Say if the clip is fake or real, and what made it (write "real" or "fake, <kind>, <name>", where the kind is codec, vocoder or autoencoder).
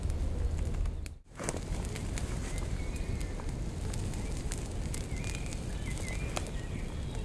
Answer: real